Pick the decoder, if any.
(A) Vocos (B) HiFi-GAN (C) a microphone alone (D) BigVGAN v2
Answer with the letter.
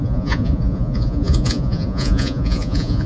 A